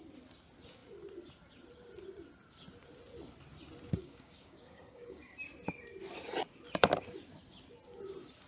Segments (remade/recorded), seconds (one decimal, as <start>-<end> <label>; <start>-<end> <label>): 0.0-4.0 recorded; 4.0-5.3 remade; 5.3-8.5 recorded